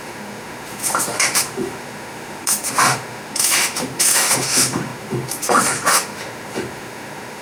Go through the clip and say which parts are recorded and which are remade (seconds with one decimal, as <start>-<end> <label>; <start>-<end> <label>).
0.0-7.4 remade